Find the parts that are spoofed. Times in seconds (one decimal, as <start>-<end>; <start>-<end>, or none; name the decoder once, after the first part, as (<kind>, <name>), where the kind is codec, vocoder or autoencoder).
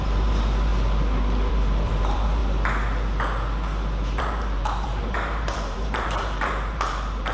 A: 0.0-0.7 (vocoder, BigVGAN v2); 1.5-2.4; 4.2-7.3